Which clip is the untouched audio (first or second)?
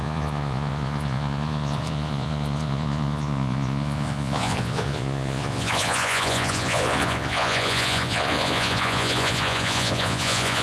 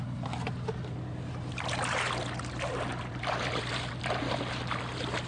second